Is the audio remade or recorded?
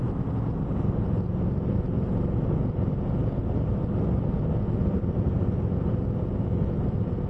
recorded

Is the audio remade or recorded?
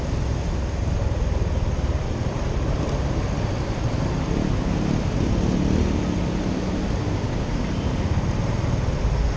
recorded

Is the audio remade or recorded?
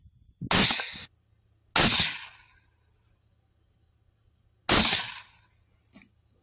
recorded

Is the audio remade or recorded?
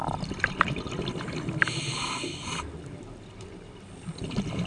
recorded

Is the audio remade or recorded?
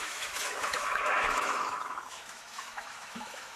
remade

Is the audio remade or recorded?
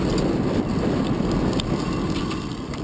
recorded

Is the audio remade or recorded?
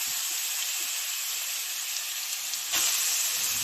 recorded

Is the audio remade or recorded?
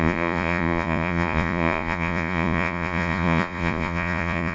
remade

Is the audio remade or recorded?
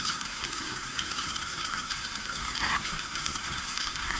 remade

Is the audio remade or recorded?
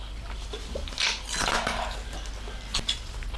recorded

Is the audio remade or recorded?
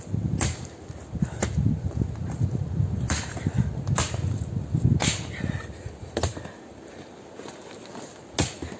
recorded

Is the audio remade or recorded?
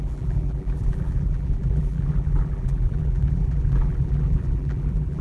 remade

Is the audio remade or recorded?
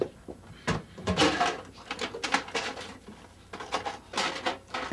recorded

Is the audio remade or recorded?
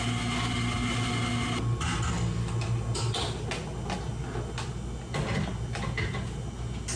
recorded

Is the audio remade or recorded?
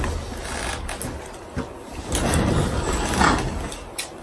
recorded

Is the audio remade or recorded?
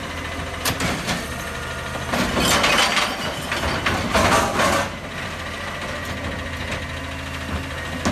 recorded